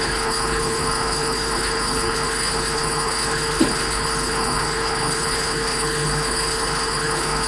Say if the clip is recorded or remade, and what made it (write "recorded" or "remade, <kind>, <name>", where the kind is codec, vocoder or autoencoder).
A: remade, codec, HILCodec